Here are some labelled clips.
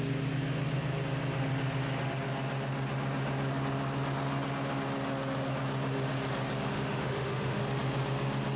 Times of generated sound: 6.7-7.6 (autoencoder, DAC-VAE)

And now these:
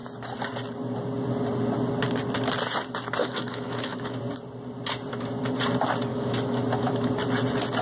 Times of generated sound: 3.2-4.2 (autoencoder, DAC-VAE); 6.1-7.1

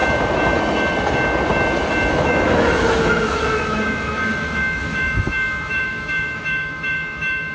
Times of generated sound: 2.1-7.5 (autoencoder, DAC-VAE)

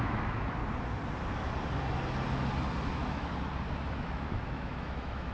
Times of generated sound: 0.0-0.6 (autoencoder, DAC-VAE); 2.9-3.3; 3.9-5.3

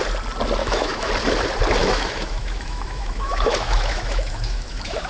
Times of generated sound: 0.6-1.1 (autoencoder, DAC-VAE); 1.8-5.1

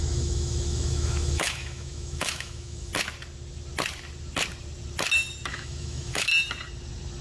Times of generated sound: 0.0-2.9 (autoencoder, DAC-VAE); 5.5-6.3

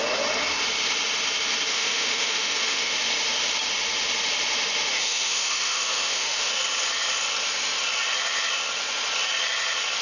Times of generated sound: 1.7-3.0 (autoencoder, DAC-VAE); 4.9-6.5

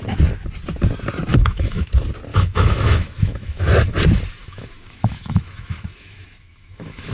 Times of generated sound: 1.3-1.9 (autoencoder, DAC-VAE); 2.3-3.6; 4.4-7.1